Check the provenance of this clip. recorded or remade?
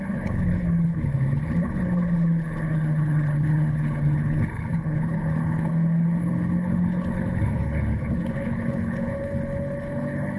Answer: remade